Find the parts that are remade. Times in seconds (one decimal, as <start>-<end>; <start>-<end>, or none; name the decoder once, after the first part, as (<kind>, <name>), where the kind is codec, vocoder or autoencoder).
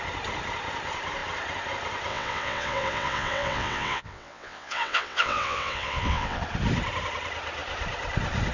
2.1-6.4 (vocoder, WaveNeXt)